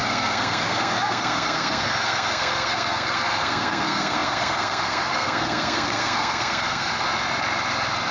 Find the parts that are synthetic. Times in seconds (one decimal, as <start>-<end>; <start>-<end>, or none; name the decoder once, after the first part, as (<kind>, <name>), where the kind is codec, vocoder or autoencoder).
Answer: 0.0-6.9 (codec, SNAC)